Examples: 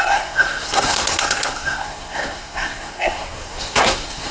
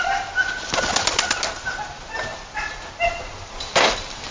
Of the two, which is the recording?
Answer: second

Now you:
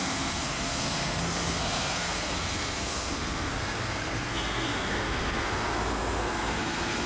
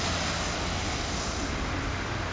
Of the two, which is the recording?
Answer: second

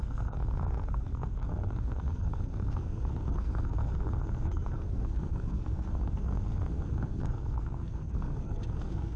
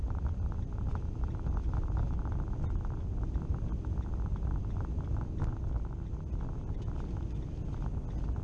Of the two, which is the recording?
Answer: second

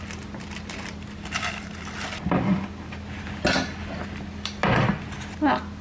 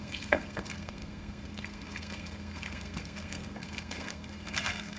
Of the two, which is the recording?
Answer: first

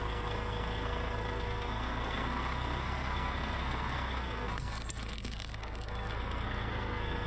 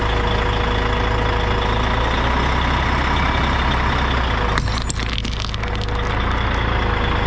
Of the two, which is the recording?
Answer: second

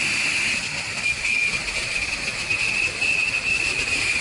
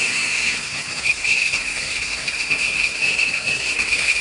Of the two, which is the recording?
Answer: first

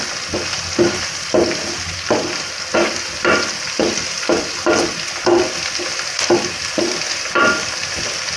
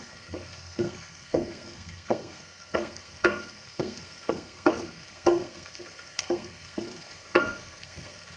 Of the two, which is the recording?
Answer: first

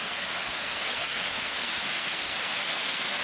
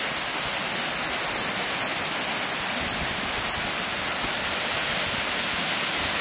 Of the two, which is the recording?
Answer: second